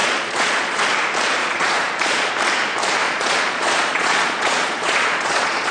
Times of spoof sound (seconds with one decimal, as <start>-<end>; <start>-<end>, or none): 0.0-0.8; 1.4-2.3; 3.0-5.7